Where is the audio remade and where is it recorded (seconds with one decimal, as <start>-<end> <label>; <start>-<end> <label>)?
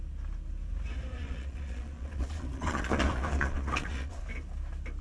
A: 0.0-1.2 recorded; 1.2-4.2 remade; 4.2-5.0 recorded